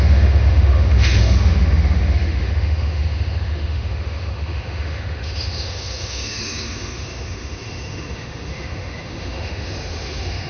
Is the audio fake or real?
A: fake